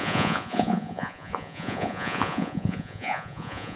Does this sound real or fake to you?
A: fake